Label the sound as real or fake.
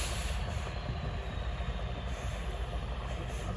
real